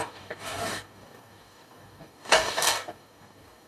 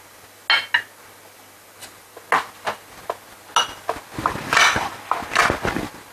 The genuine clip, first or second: second